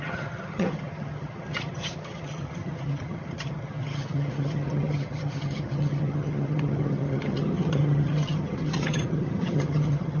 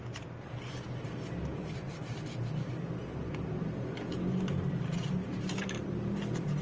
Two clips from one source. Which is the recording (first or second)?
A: second